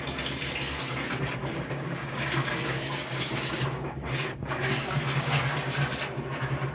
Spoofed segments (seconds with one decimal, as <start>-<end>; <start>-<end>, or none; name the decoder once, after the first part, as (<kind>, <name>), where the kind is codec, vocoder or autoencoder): 1.4-5.4 (codec, DAC)